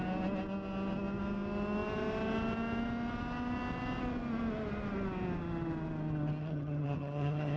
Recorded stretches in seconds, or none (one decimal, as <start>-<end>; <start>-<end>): 0.0-6.4